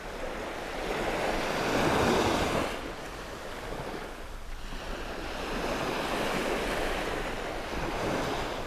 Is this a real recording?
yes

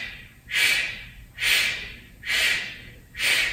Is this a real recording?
yes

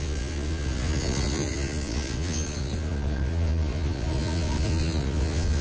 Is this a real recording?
no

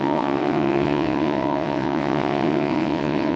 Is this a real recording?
no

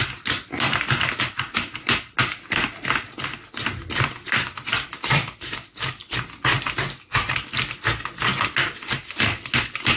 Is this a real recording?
yes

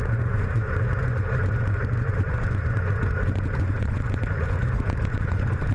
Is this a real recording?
no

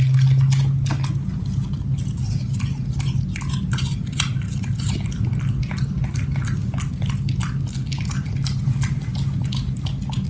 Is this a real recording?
yes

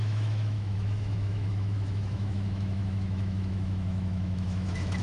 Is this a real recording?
no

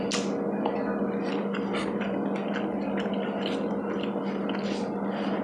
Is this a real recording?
yes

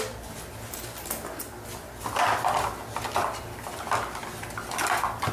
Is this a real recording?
yes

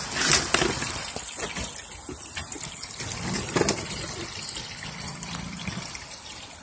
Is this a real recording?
yes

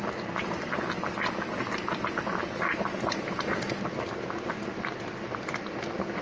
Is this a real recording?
yes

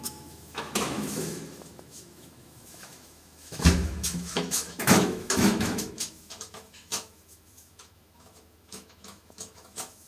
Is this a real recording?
no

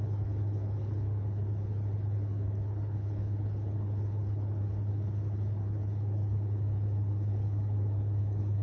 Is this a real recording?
no